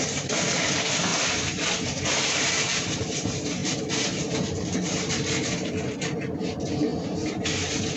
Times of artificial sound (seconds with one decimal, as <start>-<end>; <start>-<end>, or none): 0.0-8.0